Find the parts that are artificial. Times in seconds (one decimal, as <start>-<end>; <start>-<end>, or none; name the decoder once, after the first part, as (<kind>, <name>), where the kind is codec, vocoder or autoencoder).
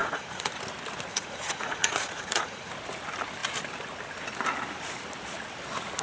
0.0-0.5 (vocoder, Vocos); 1.1-2.7